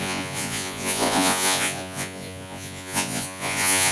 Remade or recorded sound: remade